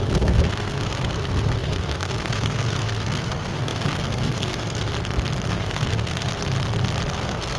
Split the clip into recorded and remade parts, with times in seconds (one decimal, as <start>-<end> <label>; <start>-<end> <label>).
0.0-4.9 remade; 4.9-5.5 recorded; 5.5-6.3 remade; 6.3-7.1 recorded; 7.1-7.6 remade